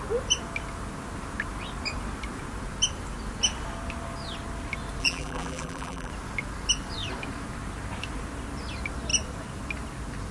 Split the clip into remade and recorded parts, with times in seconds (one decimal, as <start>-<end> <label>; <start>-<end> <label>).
0.0-5.0 recorded; 5.0-6.1 remade; 6.1-10.3 recorded